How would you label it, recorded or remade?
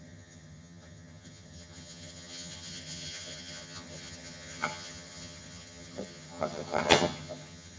remade